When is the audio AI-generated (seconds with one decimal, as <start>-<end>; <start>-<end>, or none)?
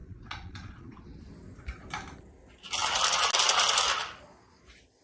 0.0-1.0